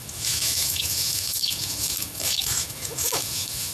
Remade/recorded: remade